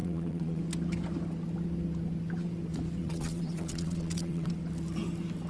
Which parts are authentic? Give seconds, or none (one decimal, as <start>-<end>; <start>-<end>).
0.6-3.0; 4.5-5.5